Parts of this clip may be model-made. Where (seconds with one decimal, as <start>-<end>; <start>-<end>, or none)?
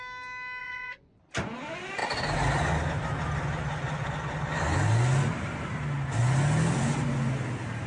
0.6-1.2